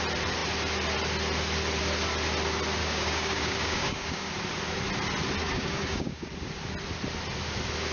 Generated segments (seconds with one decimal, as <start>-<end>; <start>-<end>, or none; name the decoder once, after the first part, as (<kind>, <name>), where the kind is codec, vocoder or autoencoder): 2.8-4.3 (codec, DAC); 5.4-6.3